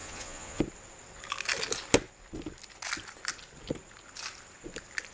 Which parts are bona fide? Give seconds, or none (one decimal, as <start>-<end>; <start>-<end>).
0.6-5.1